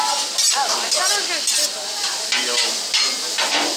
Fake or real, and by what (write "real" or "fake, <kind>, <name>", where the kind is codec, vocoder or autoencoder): real